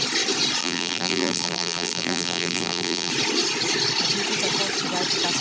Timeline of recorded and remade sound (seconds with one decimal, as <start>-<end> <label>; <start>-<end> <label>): 0.0-0.6 recorded; 0.6-3.1 remade; 3.1-5.4 recorded